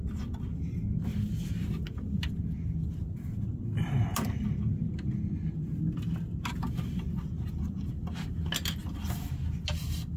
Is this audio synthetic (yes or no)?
no